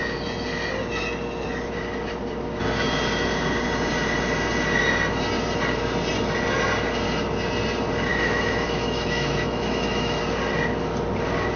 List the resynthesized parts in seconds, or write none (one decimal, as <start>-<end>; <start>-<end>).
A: 8.1-10.2